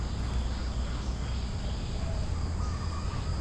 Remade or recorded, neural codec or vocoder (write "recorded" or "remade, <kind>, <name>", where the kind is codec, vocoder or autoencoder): recorded